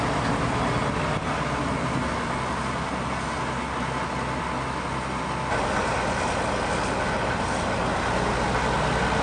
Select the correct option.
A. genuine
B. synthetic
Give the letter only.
A